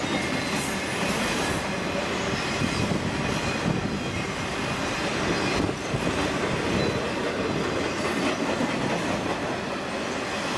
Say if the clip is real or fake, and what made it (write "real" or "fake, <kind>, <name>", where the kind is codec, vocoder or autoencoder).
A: real